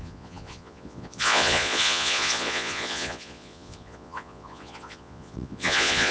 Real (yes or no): no